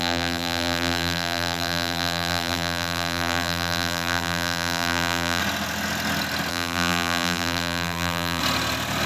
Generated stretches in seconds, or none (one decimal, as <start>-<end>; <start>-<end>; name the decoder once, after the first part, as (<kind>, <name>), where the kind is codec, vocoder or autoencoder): 0.0-5.4 (vocoder, BigVGAN v2); 6.5-8.4